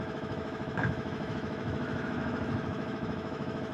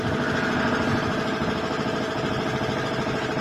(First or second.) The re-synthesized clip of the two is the first